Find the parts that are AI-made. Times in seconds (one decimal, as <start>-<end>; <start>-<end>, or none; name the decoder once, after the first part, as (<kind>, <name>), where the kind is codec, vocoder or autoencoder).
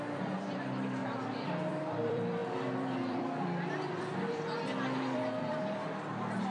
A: 0.0-1.0 (vocoder, BigVGAN v2); 1.7-6.5